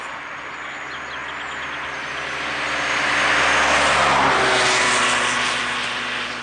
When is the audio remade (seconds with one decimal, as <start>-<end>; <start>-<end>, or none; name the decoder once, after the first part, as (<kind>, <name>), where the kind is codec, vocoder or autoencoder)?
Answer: none